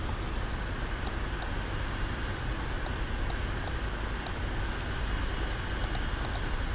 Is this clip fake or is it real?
real